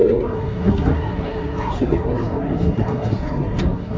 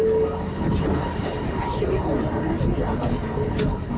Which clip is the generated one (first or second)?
first